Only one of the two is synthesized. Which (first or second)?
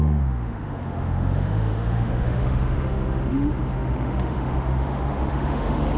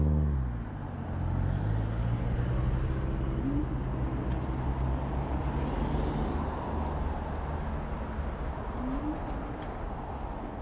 first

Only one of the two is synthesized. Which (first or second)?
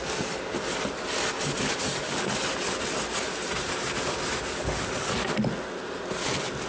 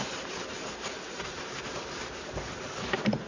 second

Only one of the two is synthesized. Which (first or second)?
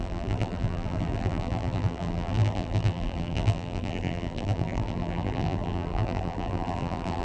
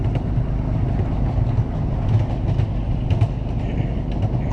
first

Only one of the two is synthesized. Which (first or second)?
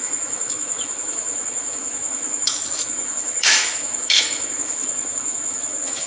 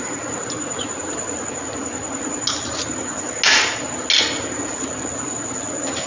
first